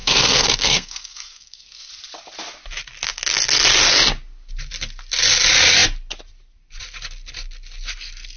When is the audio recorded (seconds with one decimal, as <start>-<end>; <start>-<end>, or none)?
1.9-8.4